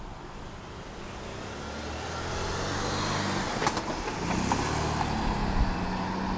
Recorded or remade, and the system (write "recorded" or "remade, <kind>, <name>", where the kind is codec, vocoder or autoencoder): recorded